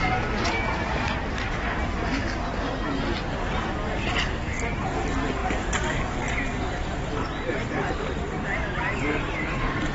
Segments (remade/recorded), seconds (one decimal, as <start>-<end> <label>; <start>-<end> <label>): 0.0-9.9 recorded